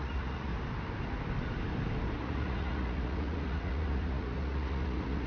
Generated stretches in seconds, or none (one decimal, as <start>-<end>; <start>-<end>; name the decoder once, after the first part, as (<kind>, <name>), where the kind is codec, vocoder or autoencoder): 0.0-0.5 (vocoder, Vocos); 2.2-5.3